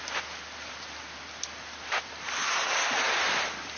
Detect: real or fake fake